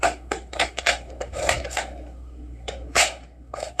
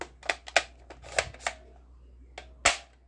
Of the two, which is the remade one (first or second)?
first